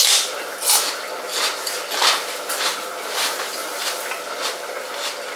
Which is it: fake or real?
real